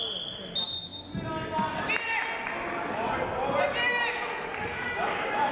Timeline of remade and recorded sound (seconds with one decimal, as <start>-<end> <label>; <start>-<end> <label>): 0.0-4.7 recorded; 4.7-5.5 remade